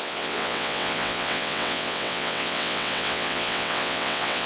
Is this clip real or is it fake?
fake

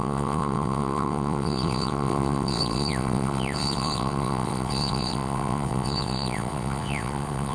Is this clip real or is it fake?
fake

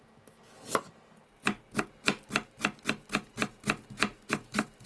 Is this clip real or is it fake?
real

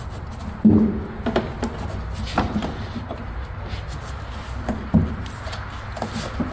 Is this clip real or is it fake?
real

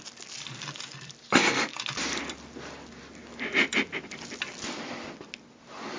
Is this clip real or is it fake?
real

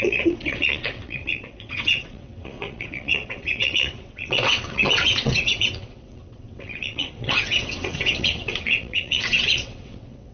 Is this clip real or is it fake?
fake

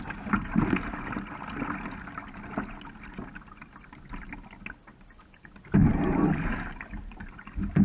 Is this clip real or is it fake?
real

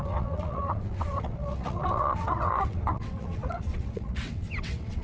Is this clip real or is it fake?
fake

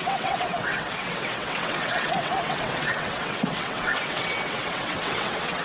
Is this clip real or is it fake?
fake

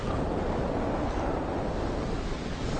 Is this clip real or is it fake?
real